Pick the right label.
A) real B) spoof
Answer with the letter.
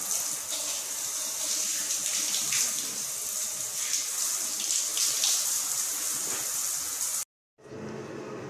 A